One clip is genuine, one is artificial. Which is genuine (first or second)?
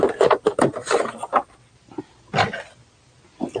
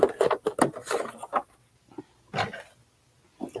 second